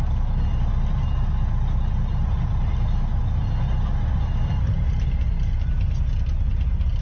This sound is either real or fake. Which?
real